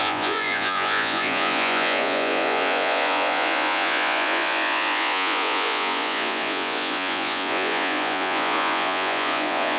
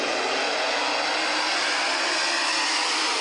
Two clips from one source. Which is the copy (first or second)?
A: first